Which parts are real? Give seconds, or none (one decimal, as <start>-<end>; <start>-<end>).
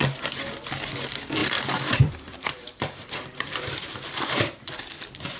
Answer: 0.0-1.4; 4.6-5.4